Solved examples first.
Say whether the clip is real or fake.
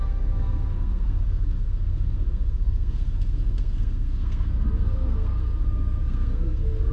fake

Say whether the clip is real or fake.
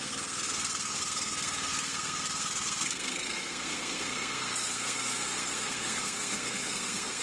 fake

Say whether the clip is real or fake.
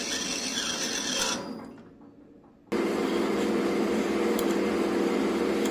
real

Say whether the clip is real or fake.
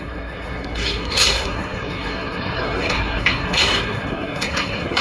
fake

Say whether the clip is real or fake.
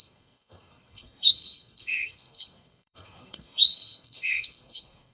fake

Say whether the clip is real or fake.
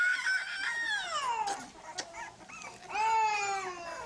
real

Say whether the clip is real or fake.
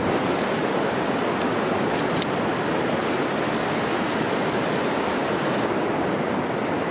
real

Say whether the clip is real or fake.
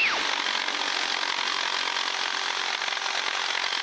real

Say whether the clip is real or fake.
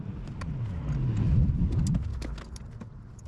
real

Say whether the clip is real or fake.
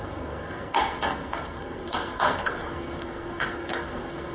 fake